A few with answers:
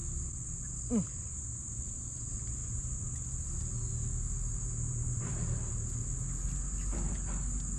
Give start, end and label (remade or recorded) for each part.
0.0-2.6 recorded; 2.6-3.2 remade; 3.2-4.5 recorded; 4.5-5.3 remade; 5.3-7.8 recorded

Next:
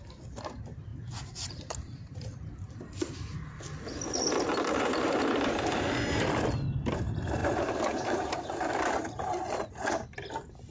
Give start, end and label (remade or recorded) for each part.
0.0-0.9 recorded; 0.9-2.7 remade; 2.7-4.5 recorded; 4.5-5.5 remade; 5.5-7.4 recorded; 7.4-9.7 remade; 9.7-10.7 recorded

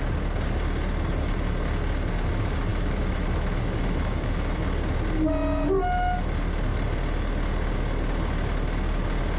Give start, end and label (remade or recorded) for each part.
0.0-2.7 recorded; 2.7-4.6 remade; 4.6-9.4 recorded

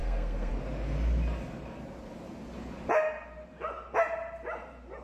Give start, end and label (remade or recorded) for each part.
0.0-0.5 remade; 0.5-5.0 recorded